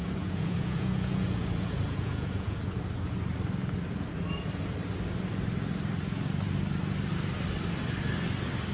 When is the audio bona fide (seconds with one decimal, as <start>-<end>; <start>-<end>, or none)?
2.6-8.7